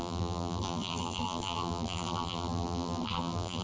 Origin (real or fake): fake